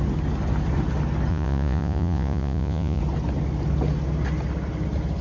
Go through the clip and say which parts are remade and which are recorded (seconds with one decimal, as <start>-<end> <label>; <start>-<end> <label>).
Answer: 0.0-1.3 recorded; 1.3-3.0 remade; 3.0-5.2 recorded